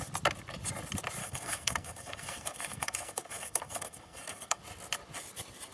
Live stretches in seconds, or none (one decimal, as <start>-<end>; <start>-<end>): 0.0-1.2; 4.6-5.7